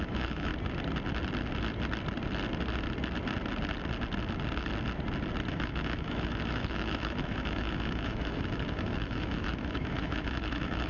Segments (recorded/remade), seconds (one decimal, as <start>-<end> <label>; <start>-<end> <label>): 0.0-0.5 remade; 0.5-5.5 recorded; 5.5-10.9 remade